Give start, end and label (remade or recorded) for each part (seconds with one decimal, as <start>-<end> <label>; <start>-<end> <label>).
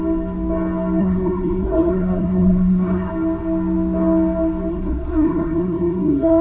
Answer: 0.0-1.0 recorded; 1.0-3.1 remade; 3.1-4.7 recorded; 4.7-6.4 remade